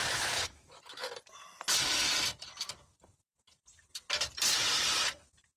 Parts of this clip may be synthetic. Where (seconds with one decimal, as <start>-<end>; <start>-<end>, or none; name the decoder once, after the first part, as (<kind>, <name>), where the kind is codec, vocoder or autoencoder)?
0.0-1.1 (autoencoder, DAC-VAE)